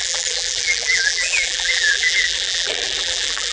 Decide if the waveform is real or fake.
fake